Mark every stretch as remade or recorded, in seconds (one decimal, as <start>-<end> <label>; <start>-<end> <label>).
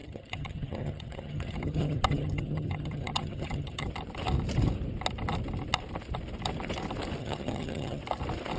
0.0-3.9 remade; 3.9-7.2 recorded; 7.2-8.0 remade; 8.0-8.6 recorded